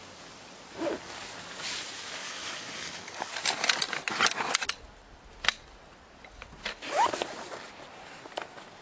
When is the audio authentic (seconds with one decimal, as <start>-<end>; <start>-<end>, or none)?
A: 0.0-2.2; 3.3-8.8